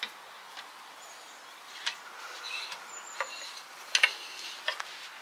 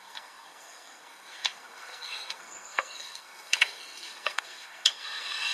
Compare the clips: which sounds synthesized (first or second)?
second